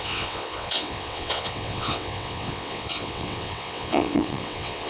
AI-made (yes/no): yes